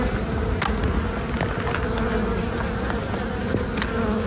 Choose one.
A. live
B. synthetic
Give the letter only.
A